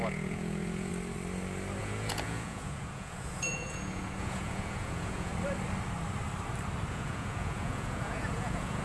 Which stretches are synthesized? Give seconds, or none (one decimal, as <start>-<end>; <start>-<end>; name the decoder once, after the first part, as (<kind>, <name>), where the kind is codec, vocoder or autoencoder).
0.0-0.9 (vocoder, Vocos); 1.8-5.3; 6.9-8.8